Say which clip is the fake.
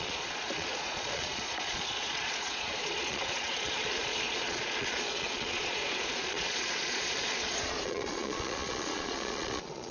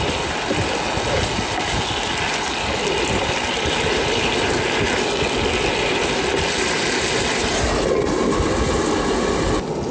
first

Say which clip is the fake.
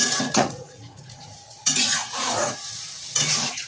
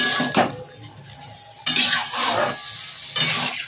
first